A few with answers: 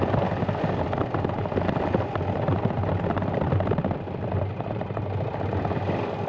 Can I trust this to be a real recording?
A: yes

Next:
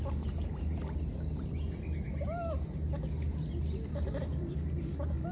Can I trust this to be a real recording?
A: yes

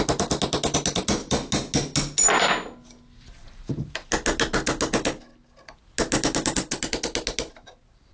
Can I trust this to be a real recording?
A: yes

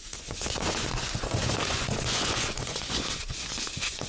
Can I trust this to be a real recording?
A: no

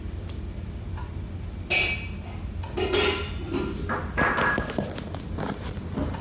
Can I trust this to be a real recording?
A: yes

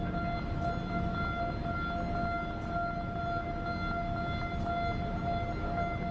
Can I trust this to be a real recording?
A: yes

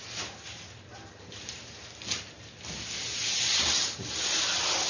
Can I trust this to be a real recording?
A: yes